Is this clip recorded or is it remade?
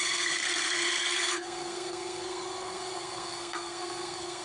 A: remade